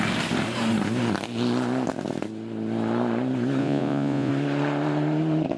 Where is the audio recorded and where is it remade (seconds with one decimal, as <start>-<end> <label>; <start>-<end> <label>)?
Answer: 0.0-3.6 recorded; 3.6-4.3 remade; 4.3-5.6 recorded